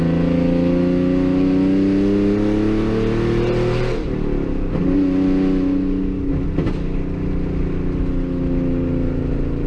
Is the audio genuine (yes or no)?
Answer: yes